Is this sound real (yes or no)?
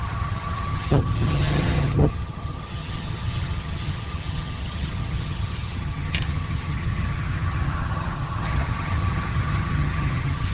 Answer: no